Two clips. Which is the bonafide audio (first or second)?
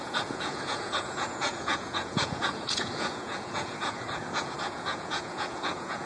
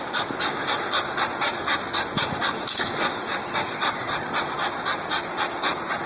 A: second